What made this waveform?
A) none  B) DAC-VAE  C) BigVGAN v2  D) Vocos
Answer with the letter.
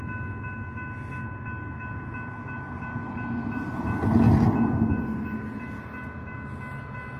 A